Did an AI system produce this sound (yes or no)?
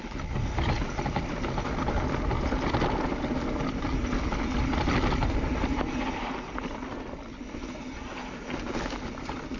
no